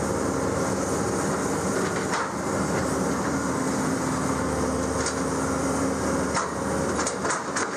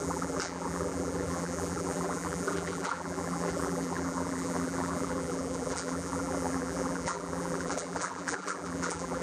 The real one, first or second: first